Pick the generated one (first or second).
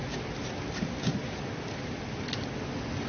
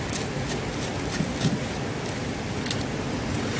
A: second